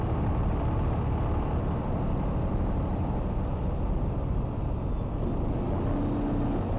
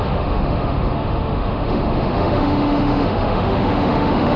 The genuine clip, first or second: first